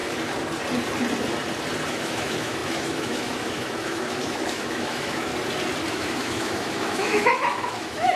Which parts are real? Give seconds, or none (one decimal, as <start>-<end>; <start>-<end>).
0.0-1.9; 5.3-5.9